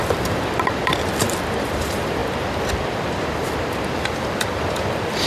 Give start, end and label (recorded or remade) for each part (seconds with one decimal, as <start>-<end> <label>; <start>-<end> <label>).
0.0-5.3 remade